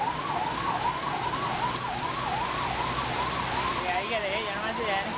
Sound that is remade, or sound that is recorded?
recorded